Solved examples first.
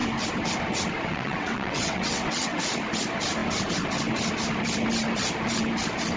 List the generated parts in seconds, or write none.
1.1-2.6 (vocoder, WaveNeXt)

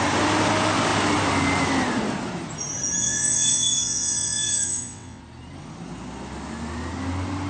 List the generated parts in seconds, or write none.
3.0-5.2 (vocoder, WaveNeXt)

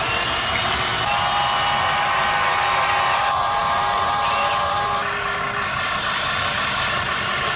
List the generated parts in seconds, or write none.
none

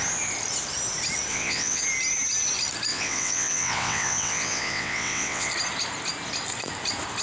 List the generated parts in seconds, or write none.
1.3-1.8 (vocoder, WaveNeXt); 2.9-5.5

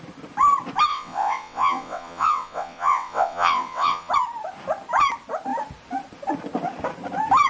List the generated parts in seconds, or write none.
0.9-4.1 (vocoder, WaveNeXt)